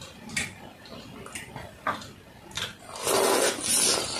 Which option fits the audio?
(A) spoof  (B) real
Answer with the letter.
B